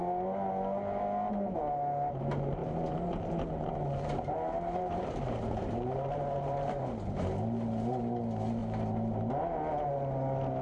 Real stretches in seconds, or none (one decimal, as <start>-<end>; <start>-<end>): 0.0-2.6; 6.9-8.6; 9.3-10.6